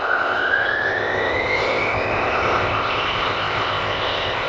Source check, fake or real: fake